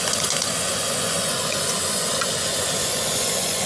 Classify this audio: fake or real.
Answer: fake